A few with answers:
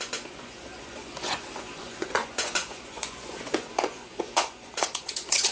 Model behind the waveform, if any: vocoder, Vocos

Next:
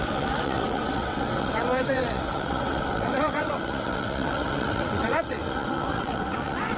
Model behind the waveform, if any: vocoder, WaveNeXt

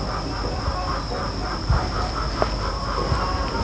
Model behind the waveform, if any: none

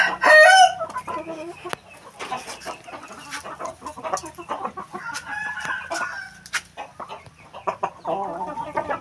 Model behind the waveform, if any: none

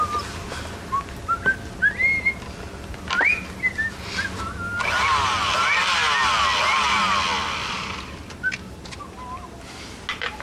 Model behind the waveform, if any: none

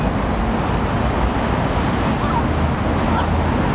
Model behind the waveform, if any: none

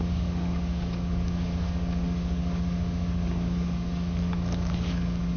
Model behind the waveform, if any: codec, DAC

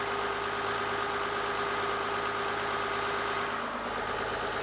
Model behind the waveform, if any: none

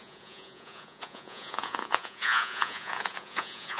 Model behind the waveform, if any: vocoder, Vocos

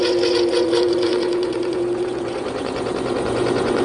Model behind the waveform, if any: vocoder, Vocos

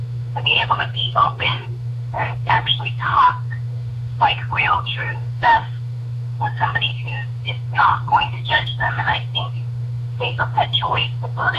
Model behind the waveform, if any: autoencoder, DAC-VAE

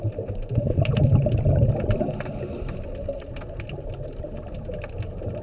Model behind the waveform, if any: none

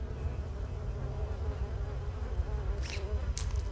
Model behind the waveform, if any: none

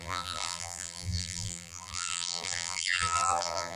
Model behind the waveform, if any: vocoder, BigVGAN v2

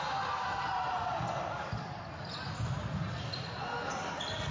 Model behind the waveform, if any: none